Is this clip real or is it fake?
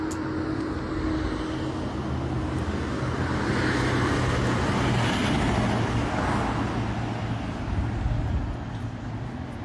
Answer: real